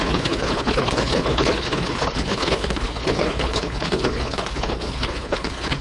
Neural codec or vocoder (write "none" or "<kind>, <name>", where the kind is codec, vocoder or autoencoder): codec, HILCodec